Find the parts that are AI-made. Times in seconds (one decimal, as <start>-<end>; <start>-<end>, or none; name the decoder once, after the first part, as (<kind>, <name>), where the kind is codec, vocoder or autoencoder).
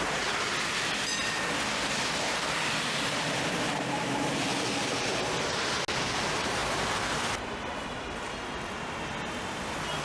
none